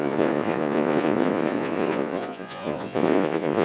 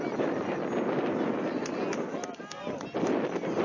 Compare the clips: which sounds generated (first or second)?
first